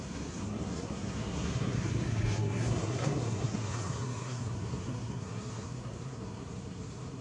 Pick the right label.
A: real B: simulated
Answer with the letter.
B